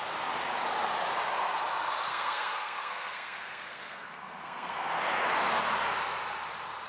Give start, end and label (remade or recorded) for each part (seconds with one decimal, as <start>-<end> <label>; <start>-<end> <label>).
0.0-2.1 recorded; 2.1-5.0 remade; 5.0-6.9 recorded